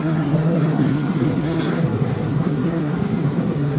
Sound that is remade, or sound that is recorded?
remade